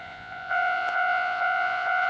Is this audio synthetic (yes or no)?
yes